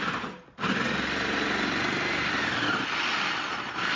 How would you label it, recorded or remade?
recorded